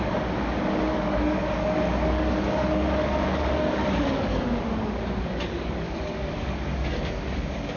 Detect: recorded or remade remade